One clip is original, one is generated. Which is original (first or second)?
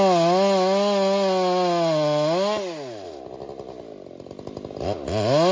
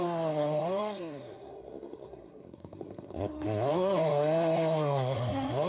first